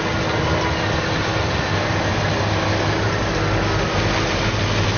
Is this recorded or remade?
recorded